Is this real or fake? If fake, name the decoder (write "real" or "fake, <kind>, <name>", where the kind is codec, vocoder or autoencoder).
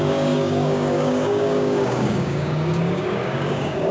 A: fake, codec, DAC